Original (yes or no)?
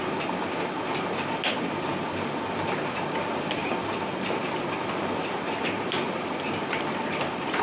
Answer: yes